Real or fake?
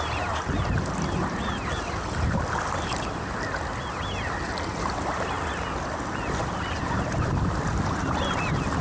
real